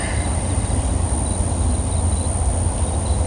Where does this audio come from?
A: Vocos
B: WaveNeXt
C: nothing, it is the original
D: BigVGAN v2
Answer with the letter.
C